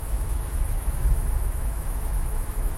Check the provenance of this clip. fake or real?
fake